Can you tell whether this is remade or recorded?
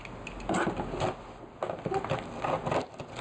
recorded